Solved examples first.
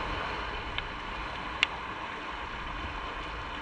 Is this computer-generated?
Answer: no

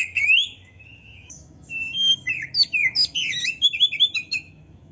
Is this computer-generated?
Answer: yes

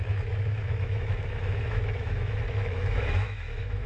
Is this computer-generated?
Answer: yes